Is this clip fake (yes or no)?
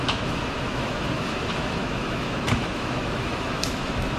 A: yes